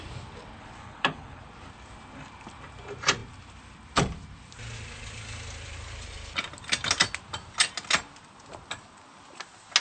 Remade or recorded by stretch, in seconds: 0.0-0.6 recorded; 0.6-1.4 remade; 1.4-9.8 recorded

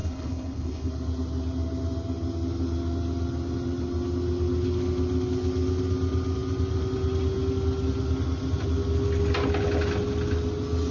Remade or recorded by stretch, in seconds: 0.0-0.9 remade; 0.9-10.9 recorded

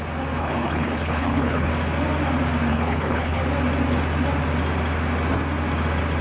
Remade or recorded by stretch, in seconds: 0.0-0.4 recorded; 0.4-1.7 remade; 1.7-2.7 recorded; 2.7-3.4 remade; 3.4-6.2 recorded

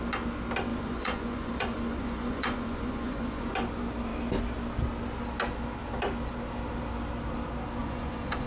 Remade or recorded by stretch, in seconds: 0.0-0.7 recorded; 0.7-3.5 remade; 3.5-7.8 recorded; 7.8-8.5 remade

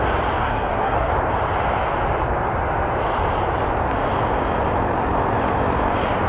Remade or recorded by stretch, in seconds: 0.0-0.4 recorded; 0.4-1.1 remade; 1.1-6.3 recorded